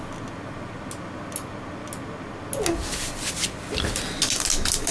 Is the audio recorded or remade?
recorded